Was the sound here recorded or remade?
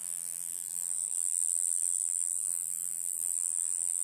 remade